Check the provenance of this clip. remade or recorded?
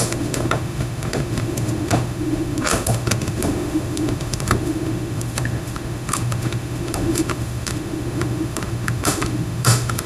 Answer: remade